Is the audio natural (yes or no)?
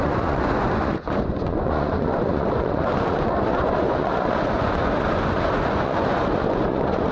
no